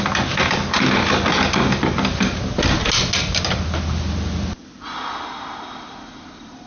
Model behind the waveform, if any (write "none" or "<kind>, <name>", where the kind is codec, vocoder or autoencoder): none